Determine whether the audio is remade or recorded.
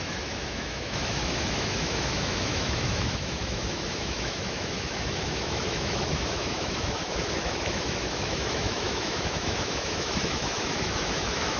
remade